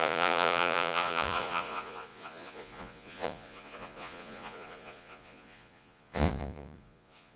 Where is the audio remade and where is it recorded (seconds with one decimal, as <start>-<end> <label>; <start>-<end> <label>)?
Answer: 0.0-7.4 remade